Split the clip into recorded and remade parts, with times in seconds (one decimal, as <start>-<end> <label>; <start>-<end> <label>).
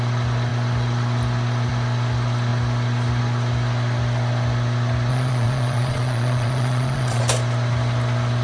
0.0-5.1 recorded; 5.1-7.2 remade; 7.2-8.4 recorded